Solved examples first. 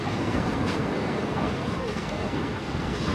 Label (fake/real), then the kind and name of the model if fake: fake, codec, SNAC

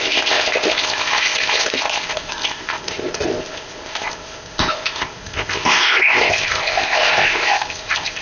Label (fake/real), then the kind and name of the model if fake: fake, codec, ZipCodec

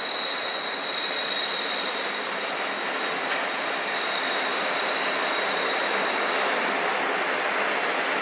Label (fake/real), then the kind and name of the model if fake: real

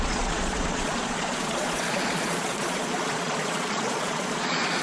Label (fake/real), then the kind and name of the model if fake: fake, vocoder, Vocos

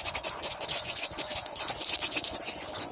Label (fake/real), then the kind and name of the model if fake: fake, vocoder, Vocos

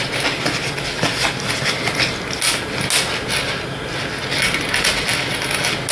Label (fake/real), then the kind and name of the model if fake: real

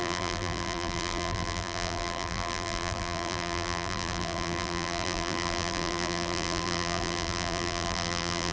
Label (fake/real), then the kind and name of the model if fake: fake, vocoder, BigVGAN v2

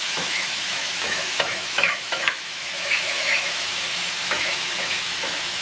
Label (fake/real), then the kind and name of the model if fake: fake, autoencoder, DAC-VAE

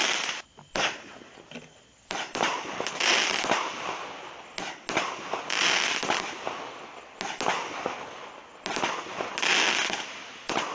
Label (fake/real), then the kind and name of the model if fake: real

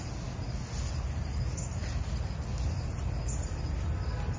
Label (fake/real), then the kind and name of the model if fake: real